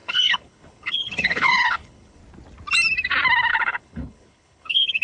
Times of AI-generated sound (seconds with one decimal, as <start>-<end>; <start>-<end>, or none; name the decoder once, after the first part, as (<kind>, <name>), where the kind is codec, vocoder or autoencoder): 0.0-2.2 (codec, HILCodec); 3.5-5.0